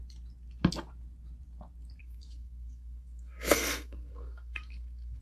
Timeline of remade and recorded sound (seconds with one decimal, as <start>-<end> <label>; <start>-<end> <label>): 0.0-2.0 recorded; 2.0-5.2 remade